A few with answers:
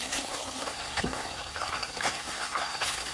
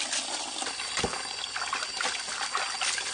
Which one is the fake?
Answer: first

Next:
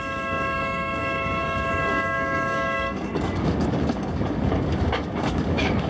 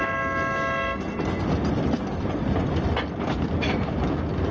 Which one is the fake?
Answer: first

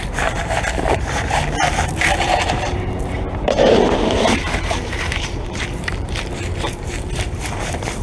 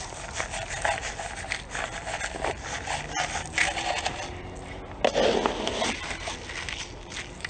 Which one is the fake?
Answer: first